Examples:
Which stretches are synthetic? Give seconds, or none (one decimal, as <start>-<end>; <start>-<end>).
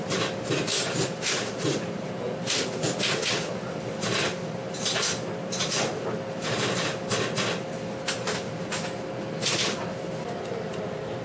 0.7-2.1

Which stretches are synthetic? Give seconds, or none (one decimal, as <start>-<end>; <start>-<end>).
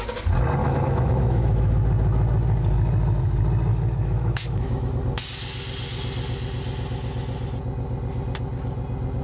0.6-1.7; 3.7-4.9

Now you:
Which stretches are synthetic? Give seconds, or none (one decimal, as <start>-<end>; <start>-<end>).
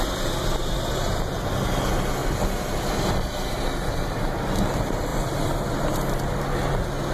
2.2-3.1; 5.1-6.3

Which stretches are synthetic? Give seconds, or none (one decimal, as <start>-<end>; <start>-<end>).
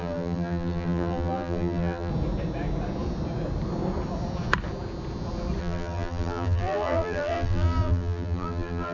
0.0-2.1; 5.6-8.9